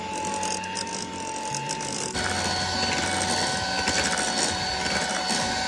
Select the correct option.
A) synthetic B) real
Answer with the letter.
B